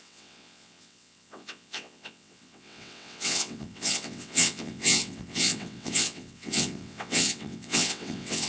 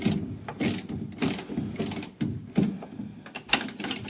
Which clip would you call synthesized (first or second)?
first